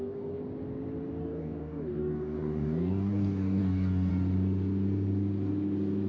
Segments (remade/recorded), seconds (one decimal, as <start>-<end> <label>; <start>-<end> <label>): 0.0-0.4 remade; 0.4-1.2 recorded; 1.2-4.1 remade; 4.1-6.1 recorded

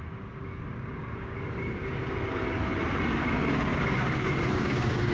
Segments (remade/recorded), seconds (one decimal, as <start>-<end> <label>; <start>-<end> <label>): 0.0-2.6 remade; 2.6-3.2 recorded; 3.2-5.1 remade

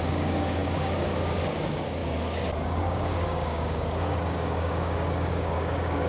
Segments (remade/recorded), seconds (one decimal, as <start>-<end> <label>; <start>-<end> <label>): 0.0-6.1 remade

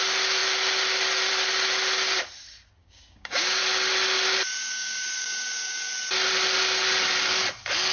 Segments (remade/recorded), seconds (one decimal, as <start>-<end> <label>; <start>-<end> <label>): 0.0-2.8 recorded; 2.8-3.6 remade; 3.6-4.6 recorded; 4.6-5.9 remade; 5.9-7.9 recorded

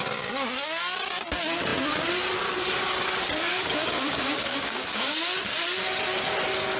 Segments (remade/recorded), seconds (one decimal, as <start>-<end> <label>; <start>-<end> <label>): 0.0-3.5 recorded; 3.5-5.2 remade; 5.2-6.8 recorded